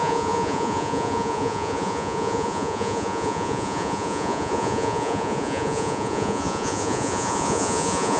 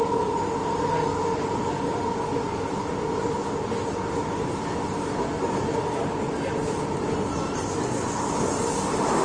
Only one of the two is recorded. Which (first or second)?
second